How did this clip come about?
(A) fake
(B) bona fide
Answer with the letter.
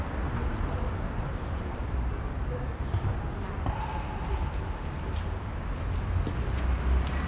B